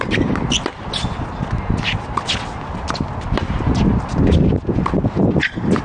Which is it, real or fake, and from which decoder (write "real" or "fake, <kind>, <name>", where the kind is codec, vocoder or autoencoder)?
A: real